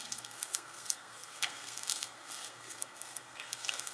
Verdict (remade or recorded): remade